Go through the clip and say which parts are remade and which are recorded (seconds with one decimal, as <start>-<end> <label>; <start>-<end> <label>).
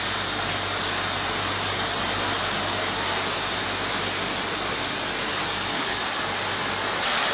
0.0-5.3 recorded; 5.3-6.0 remade; 6.0-7.3 recorded